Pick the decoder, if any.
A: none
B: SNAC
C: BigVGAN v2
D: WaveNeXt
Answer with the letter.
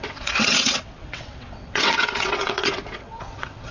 D